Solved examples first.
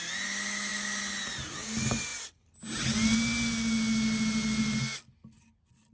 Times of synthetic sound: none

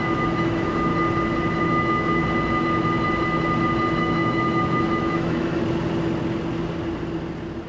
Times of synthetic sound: 0.0-0.9 (autoencoder, DAC-VAE); 1.6-2.2; 4.0-5.6